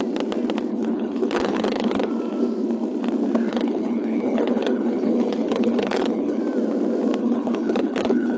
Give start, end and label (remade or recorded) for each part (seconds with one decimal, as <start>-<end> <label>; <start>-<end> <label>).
0.0-0.7 recorded; 0.7-2.1 remade; 2.1-3.5 recorded; 3.5-6.4 remade; 6.4-7.2 recorded; 7.2-8.4 remade